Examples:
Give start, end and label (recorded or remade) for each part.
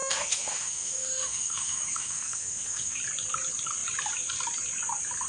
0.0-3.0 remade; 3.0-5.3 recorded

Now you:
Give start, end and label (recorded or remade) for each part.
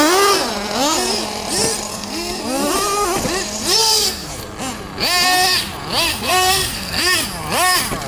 0.0-1.9 recorded; 1.9-2.4 remade; 2.4-3.8 recorded; 3.8-4.3 remade; 4.3-6.1 recorded; 6.1-7.0 remade; 7.0-8.1 recorded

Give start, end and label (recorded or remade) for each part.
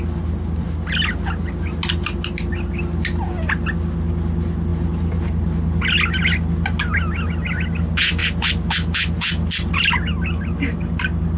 0.0-11.4 recorded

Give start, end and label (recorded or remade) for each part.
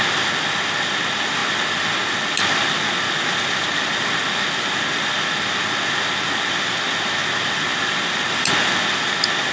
0.0-9.5 recorded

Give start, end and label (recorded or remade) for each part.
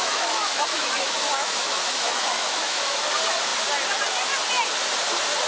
0.0-3.1 remade; 3.1-5.5 recorded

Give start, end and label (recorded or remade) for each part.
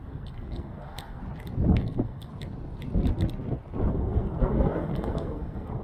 0.0-1.2 remade; 1.2-1.7 recorded; 1.7-2.3 remade; 2.3-3.9 recorded; 3.9-5.8 remade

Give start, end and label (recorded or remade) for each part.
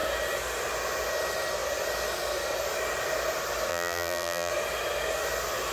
0.0-3.7 recorded; 3.7-4.5 remade; 4.5-5.7 recorded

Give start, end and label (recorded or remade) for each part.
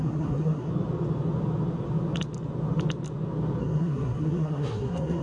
0.0-0.7 remade; 0.7-3.6 recorded; 3.6-5.2 remade